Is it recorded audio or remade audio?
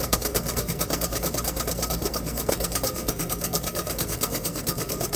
remade